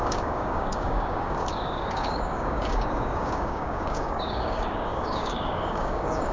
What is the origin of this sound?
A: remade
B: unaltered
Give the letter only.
A